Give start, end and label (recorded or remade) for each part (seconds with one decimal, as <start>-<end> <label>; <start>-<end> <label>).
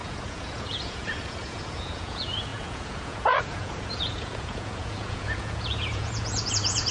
0.0-6.9 remade